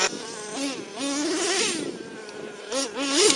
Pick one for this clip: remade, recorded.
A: recorded